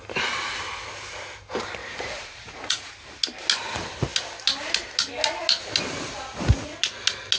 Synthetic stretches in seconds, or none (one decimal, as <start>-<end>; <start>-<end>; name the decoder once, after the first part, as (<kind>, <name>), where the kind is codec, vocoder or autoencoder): 1.8-2.9 (vocoder, Vocos)